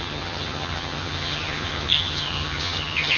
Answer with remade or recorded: remade